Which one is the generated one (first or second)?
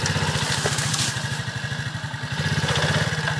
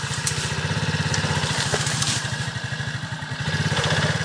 second